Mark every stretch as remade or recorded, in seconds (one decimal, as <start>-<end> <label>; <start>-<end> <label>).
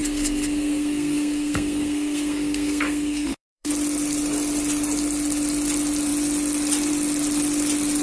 0.0-3.7 remade; 3.7-8.0 recorded